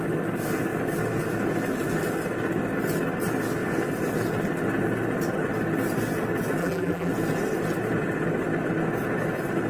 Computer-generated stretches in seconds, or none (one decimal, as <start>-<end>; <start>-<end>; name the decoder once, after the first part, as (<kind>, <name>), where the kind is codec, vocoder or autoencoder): 6.6-7.1 (vocoder, BigVGAN v2)

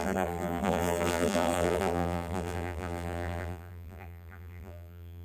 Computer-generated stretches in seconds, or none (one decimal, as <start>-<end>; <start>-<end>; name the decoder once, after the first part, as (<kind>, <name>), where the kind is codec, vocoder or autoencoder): 0.0-5.2 (vocoder, BigVGAN v2)

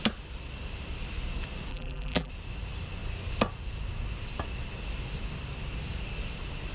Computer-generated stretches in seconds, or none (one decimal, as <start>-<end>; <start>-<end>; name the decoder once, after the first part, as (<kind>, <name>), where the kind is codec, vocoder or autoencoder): 1.7-2.3 (vocoder, BigVGAN v2)

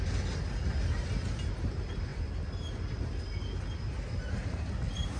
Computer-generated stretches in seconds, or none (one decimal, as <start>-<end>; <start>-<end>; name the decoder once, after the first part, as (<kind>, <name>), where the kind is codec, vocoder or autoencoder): none